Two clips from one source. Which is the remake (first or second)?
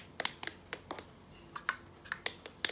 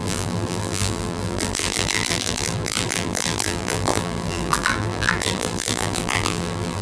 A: second